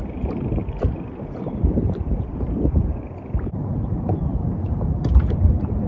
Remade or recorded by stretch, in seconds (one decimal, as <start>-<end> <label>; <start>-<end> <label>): 0.0-0.6 recorded; 0.6-3.0 remade; 3.0-5.9 recorded